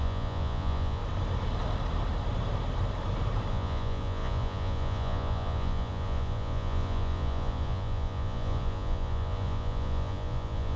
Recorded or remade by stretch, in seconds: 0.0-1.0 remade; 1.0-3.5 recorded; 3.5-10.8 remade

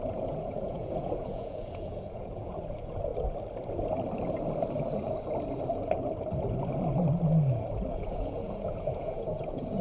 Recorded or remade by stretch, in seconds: 0.0-3.1 remade; 3.1-7.9 recorded; 7.9-9.8 remade